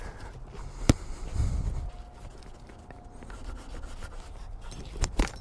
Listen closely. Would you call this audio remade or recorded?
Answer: recorded